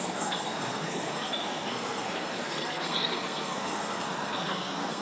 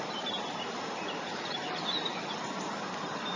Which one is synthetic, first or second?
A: first